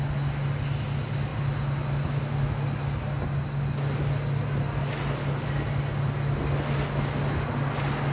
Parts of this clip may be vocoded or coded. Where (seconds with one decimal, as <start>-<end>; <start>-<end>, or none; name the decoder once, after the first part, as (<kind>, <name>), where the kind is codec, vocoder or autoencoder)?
none